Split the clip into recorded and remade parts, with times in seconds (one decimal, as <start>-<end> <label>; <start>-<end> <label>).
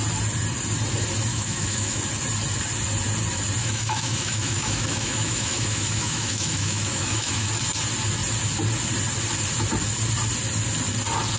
0.0-1.3 recorded; 1.3-2.0 remade; 2.0-3.6 recorded; 3.6-7.5 remade; 7.5-11.4 recorded